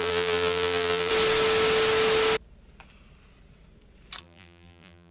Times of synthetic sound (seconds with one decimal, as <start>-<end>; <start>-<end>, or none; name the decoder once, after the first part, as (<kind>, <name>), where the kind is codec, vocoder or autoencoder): 0.0-1.1 (vocoder, BigVGAN v2); 4.2-5.1